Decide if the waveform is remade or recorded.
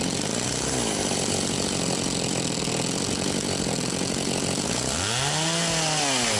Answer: recorded